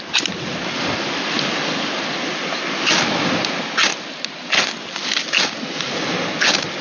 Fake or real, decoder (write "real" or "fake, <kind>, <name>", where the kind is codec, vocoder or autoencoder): real